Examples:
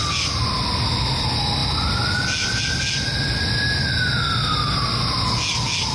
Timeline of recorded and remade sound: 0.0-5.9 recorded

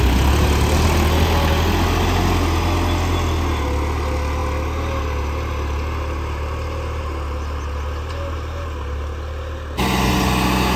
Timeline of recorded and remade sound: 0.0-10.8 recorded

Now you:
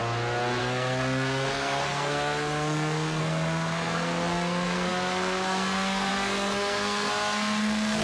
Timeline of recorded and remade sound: 0.0-0.6 recorded; 0.6-8.0 remade

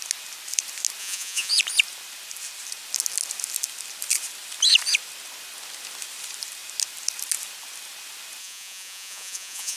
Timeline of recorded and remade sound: 0.0-1.0 recorded; 1.0-1.5 remade; 1.5-8.4 recorded; 8.4-9.8 remade

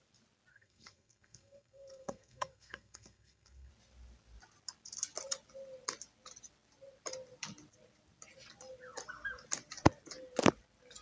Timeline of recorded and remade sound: 0.0-0.5 recorded; 0.5-3.7 remade; 3.7-11.0 recorded

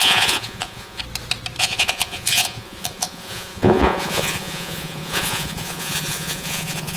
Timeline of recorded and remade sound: 0.0-1.0 remade; 1.0-1.6 recorded; 1.6-7.0 remade

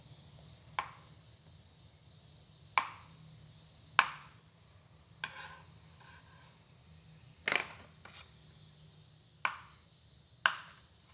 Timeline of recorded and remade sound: 0.0-11.1 recorded